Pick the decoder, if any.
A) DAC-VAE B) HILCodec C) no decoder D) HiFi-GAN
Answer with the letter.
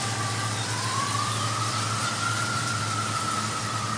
C